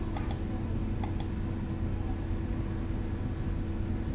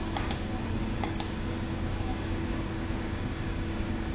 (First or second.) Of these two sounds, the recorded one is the first